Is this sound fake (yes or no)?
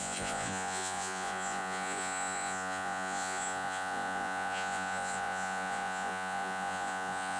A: yes